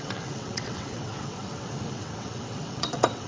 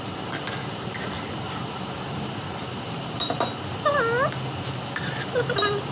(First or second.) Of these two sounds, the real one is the second